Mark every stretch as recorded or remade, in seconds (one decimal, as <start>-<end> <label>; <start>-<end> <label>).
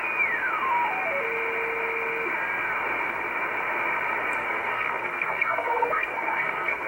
0.0-4.4 recorded; 4.4-6.9 remade